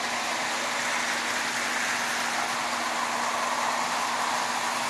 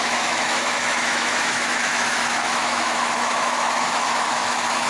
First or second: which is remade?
second